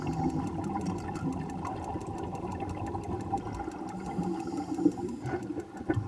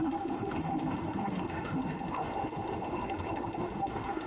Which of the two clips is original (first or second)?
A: first